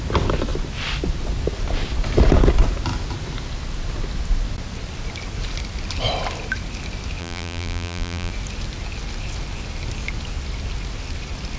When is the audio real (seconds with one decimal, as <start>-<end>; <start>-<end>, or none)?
0.0-7.2; 8.3-11.6